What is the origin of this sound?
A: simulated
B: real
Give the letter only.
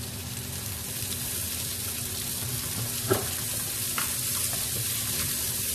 A